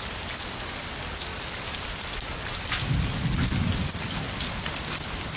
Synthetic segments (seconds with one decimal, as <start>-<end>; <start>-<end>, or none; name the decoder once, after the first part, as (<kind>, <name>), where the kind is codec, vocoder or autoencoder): none